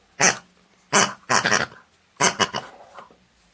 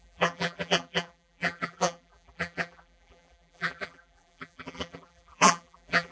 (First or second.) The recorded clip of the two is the first